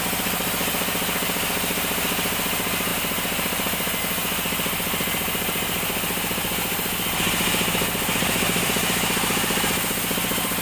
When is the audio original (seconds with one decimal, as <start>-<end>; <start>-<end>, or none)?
0.0-10.6